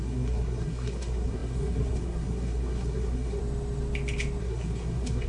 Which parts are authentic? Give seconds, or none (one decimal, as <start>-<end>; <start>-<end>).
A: 3.4-4.4